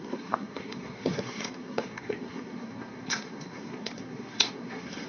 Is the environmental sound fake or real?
fake